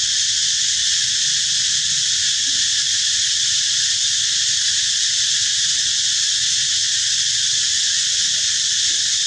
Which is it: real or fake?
real